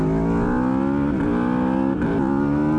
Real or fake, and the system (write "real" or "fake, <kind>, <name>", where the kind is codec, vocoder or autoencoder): real